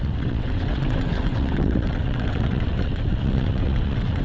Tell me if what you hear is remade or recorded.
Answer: remade